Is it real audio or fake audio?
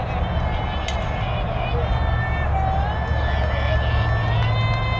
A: real